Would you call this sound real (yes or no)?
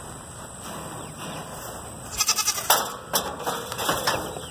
yes